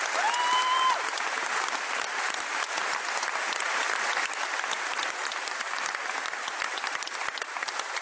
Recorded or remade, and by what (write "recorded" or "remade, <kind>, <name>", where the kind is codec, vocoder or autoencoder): recorded